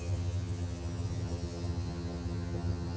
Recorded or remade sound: remade